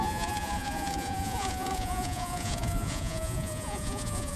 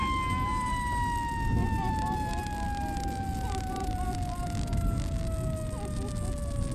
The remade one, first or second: first